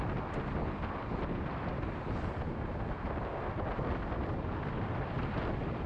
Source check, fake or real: real